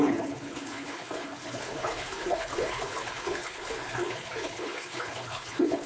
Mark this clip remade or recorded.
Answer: remade